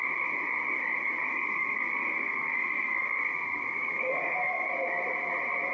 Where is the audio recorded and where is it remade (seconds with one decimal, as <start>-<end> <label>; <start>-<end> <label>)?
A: 0.0-1.3 recorded; 1.3-4.7 remade; 4.7-5.7 recorded